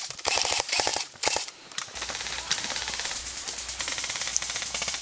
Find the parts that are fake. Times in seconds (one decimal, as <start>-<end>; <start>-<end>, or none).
0.0-4.3

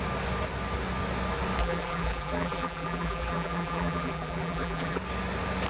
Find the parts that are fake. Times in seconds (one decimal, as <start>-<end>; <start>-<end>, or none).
1.6-5.0

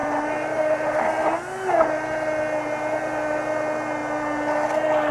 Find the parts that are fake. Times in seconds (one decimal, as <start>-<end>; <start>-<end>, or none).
0.0-1.0

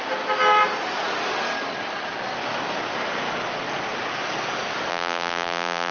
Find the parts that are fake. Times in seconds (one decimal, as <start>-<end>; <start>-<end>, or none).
4.9-5.9

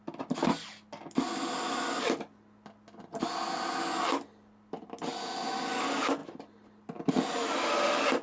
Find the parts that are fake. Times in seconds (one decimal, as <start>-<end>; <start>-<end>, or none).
none

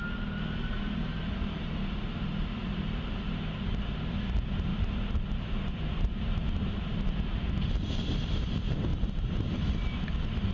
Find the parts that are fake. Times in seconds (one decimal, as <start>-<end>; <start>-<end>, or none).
0.7-4.7; 5.7-10.5